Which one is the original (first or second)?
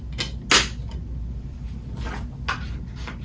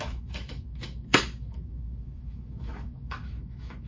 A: first